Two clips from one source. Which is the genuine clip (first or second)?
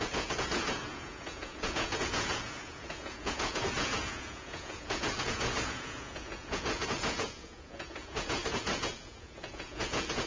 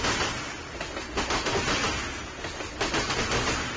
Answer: second